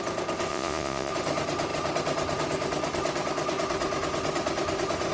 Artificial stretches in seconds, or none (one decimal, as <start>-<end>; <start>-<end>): 0.5-1.1